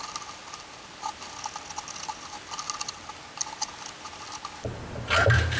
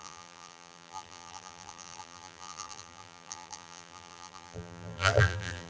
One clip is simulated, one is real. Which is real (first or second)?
first